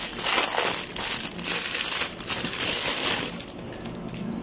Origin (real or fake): real